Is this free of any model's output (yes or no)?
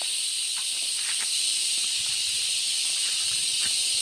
no